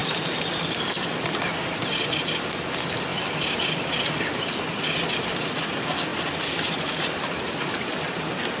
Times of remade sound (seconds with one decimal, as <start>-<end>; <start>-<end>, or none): 0.0-1.5; 3.1-3.9; 6.1-7.9